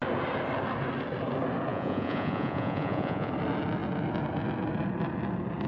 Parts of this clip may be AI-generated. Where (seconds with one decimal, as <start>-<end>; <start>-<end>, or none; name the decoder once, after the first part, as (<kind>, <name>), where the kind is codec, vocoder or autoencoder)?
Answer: 1.7-3.3 (vocoder, Vocos)